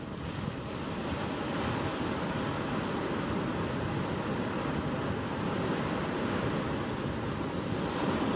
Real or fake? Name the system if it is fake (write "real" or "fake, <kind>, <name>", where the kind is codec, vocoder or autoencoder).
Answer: real